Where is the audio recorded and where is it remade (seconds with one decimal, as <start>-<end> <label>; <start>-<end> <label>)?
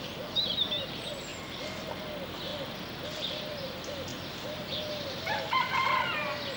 0.0-1.3 recorded; 1.3-2.0 remade; 2.0-2.5 recorded; 2.5-3.5 remade; 3.5-6.6 recorded